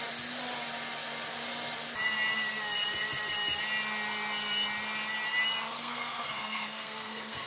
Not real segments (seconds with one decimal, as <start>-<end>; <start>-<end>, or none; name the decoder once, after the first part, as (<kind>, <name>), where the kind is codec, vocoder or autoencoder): 5.8-7.5 (codec, SNAC)